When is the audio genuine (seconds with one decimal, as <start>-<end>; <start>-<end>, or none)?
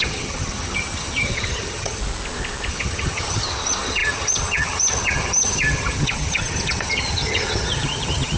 2.0-2.7